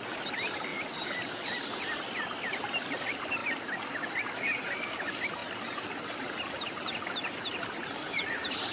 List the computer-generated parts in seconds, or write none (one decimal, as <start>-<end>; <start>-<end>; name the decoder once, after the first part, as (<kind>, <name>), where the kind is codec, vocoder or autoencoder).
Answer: 0.0-0.7 (vocoder, BigVGAN v2); 2.4-8.7